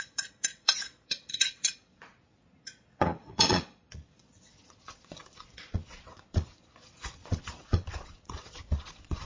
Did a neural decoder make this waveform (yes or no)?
yes